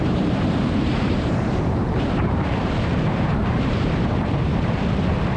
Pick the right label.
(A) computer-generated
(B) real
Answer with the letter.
A